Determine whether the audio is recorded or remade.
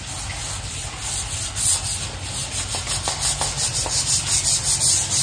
recorded